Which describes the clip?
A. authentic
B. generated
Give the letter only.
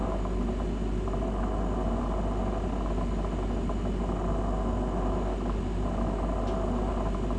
A